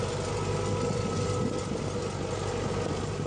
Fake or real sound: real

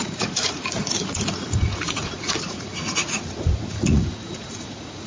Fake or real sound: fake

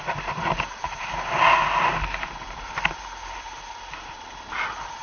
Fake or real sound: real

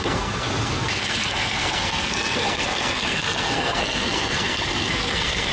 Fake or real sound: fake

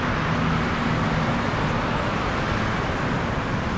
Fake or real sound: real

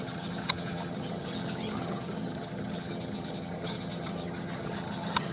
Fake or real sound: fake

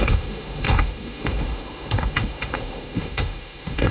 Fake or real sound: fake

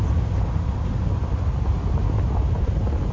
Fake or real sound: real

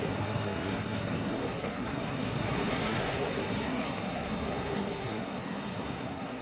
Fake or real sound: fake